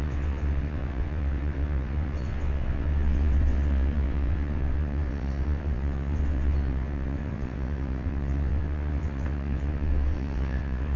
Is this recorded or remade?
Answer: remade